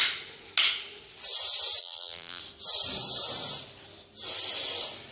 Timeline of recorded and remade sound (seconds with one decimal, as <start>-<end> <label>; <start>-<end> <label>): 0.0-1.8 recorded; 1.8-2.4 remade; 2.4-5.1 recorded